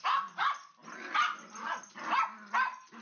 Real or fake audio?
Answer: real